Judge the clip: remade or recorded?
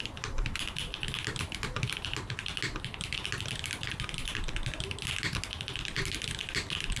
recorded